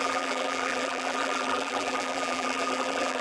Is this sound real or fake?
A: fake